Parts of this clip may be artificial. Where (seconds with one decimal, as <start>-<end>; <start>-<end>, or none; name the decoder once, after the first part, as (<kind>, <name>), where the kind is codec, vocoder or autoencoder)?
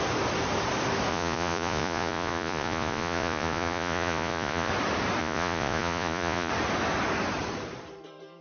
1.1-4.7 (vocoder, Vocos); 5.2-6.5